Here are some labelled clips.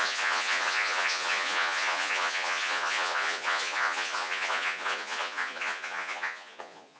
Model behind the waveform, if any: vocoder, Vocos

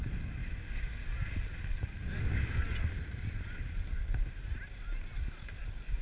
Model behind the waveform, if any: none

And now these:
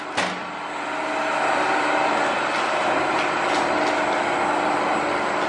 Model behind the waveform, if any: none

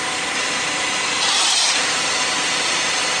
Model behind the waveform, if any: vocoder, BigVGAN v2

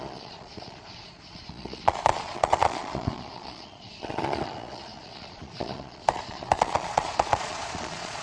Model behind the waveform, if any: vocoder, Vocos